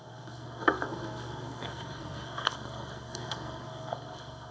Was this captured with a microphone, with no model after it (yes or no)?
no